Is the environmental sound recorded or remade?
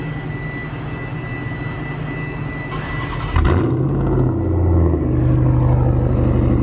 recorded